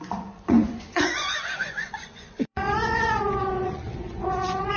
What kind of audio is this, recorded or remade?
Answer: remade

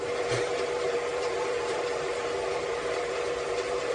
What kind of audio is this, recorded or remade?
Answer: remade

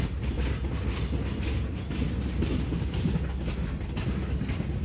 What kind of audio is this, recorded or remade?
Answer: recorded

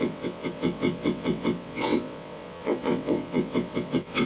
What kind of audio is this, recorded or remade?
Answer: remade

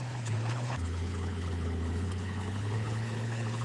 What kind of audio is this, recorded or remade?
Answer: remade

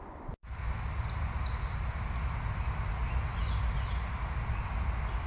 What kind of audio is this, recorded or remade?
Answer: recorded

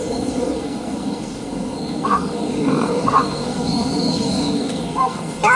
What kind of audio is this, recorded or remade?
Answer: remade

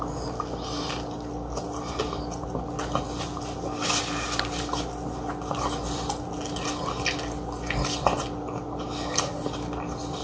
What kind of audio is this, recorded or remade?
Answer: recorded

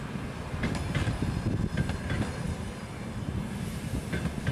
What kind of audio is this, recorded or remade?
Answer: recorded